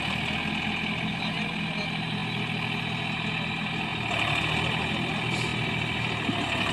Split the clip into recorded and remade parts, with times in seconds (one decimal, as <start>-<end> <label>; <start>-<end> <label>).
0.0-6.7 recorded